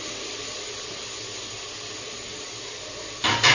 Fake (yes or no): no